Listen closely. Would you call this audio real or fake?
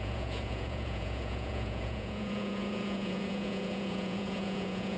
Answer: fake